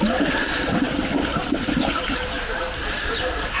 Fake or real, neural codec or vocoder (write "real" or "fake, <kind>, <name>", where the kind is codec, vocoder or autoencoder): real